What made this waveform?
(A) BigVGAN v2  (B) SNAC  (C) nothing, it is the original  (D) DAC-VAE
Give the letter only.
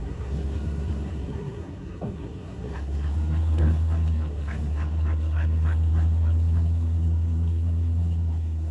B